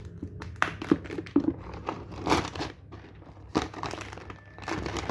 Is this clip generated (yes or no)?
no